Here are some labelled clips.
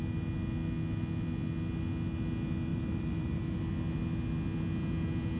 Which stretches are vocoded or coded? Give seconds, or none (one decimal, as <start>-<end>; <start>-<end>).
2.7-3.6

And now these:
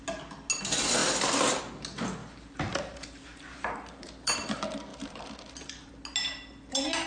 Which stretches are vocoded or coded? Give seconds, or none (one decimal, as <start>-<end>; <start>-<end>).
2.2-4.5; 4.9-5.9

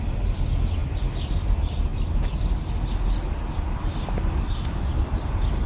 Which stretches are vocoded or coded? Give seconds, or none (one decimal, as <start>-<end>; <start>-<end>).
0.8-1.3; 1.9-2.7